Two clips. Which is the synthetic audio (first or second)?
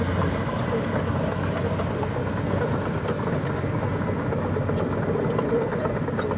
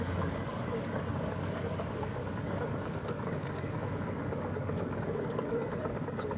second